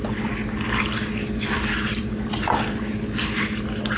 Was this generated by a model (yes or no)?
no